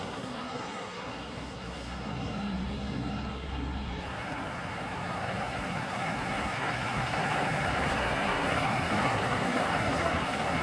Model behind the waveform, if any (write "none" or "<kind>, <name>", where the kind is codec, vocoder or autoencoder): codec, SNAC